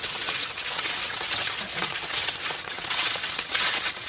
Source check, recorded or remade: remade